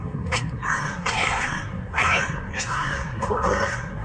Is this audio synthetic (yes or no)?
yes